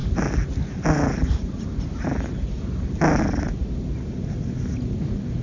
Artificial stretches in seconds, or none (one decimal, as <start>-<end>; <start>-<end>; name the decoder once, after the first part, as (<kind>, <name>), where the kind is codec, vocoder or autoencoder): none